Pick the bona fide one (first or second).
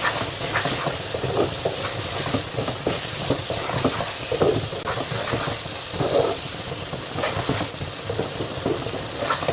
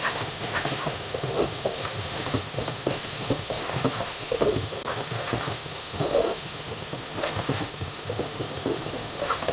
first